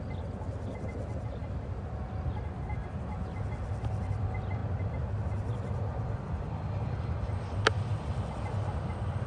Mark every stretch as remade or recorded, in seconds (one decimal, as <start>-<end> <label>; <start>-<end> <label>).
0.0-9.3 recorded